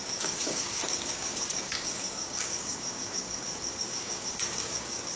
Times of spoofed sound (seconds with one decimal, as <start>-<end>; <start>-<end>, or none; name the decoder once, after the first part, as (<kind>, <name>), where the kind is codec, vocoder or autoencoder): 0.0-5.2 (codec, DAC)